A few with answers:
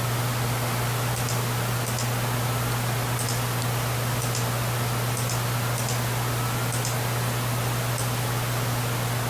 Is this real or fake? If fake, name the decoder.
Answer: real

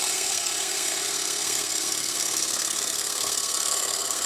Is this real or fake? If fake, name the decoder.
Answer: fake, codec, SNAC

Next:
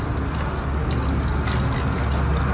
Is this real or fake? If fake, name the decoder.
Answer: real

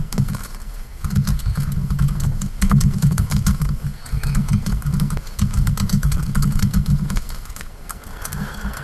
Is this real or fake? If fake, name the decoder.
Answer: fake, codec, SNAC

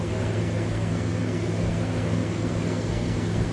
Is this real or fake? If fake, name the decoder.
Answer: fake, codec, SNAC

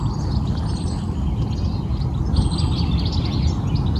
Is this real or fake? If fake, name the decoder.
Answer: real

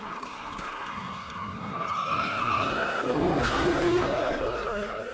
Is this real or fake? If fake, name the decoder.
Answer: fake, codec, SNAC